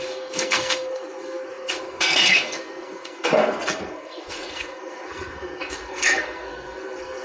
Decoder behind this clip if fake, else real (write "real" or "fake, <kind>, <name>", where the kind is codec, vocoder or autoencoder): fake, codec, SNAC